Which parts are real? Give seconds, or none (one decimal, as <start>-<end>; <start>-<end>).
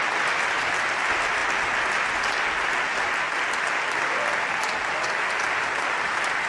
0.0-6.5